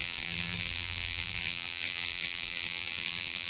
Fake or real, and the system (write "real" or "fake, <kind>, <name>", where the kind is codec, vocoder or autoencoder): fake, vocoder, BigVGAN v2